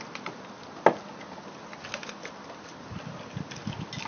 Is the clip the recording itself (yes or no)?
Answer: yes